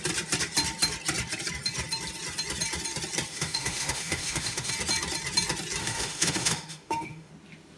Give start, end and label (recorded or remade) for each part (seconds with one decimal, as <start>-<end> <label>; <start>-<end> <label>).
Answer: 0.0-3.3 recorded; 3.3-4.7 remade; 4.7-5.8 recorded; 5.8-7.3 remade; 7.3-7.8 recorded